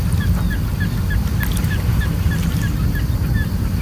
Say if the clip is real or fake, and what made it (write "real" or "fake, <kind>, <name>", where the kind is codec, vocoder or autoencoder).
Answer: real